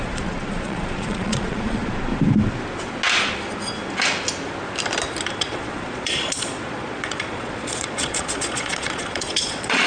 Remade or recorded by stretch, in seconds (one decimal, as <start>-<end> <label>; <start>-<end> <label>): 0.0-2.1 remade; 2.1-5.4 recorded; 5.4-9.9 remade